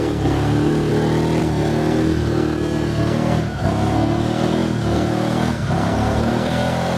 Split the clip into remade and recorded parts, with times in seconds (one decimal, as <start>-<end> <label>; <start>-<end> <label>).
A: 0.0-0.9 remade; 0.9-1.4 recorded; 1.4-7.0 remade